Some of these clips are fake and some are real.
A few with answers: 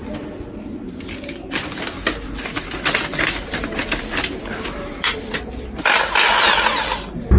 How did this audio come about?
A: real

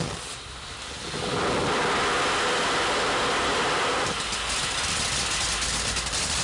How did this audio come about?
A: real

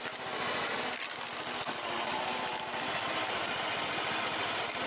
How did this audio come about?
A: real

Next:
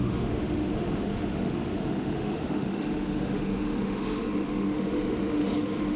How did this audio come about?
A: fake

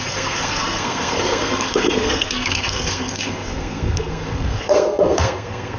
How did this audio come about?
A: fake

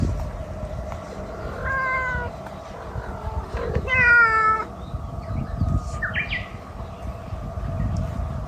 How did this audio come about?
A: real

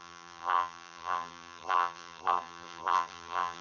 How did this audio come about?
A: fake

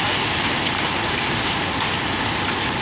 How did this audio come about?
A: real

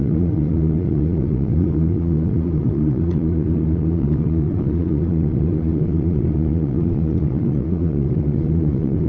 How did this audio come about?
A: fake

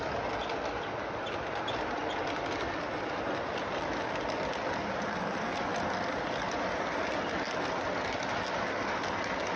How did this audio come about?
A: real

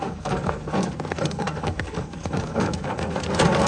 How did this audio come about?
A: fake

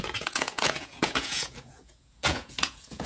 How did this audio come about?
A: fake